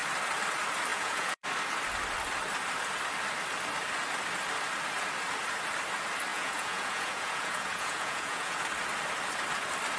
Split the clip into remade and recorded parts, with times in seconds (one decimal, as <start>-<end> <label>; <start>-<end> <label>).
0.0-0.9 recorded; 0.9-1.4 remade; 1.4-6.3 recorded; 6.3-8.6 remade; 8.6-10.0 recorded